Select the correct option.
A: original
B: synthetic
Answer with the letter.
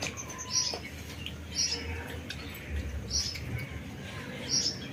A